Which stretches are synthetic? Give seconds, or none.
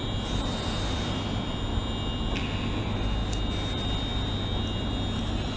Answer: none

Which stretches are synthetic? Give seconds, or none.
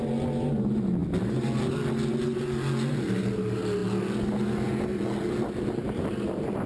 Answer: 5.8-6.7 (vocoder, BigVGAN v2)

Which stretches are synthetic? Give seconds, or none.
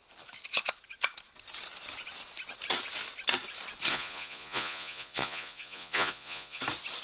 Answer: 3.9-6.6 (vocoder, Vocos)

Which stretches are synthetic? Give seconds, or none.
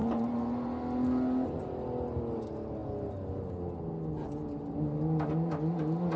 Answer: none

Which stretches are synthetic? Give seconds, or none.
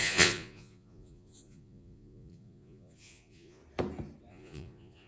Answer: 0.0-3.6 (vocoder, Vocos); 4.3-5.1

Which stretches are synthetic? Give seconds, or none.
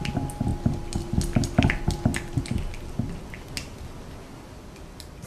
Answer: none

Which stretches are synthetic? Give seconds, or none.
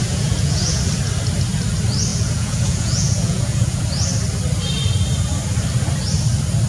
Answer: 0.0-0.8 (vocoder, Vocos); 2.1-3.8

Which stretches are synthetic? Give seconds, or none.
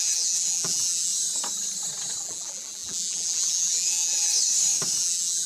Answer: 0.0-1.1 (vocoder, BigVGAN v2); 2.2-4.3; 5.0-5.5